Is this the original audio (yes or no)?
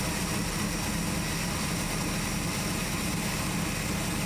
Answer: yes